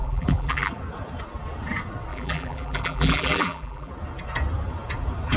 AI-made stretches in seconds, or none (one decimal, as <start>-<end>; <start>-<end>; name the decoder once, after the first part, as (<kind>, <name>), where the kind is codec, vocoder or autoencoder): 0.0-0.7 (vocoder, BigVGAN v2); 2.1-3.9